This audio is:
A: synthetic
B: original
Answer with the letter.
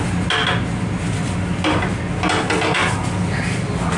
B